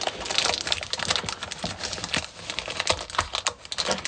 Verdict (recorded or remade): recorded